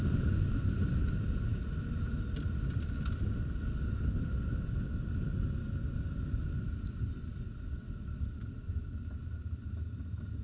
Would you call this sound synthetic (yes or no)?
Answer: no